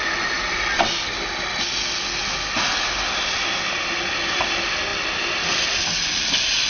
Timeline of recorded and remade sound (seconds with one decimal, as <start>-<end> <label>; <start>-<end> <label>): 0.0-6.7 recorded

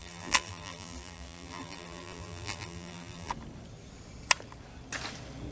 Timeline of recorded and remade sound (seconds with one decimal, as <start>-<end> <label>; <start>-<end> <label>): 0.0-3.3 remade; 3.3-5.5 recorded